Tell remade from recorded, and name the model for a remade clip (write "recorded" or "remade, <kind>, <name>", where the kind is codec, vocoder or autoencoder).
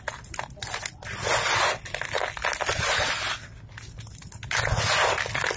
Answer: recorded